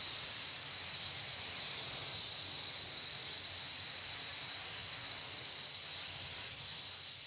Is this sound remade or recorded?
recorded